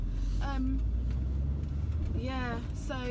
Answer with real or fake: real